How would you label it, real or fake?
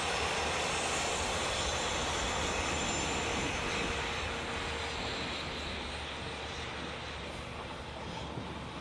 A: real